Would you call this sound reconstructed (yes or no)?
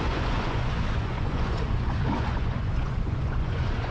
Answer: yes